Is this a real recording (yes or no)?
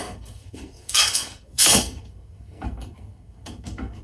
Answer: no